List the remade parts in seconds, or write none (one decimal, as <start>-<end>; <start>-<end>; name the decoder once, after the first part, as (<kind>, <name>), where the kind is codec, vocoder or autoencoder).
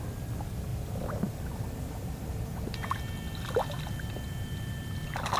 none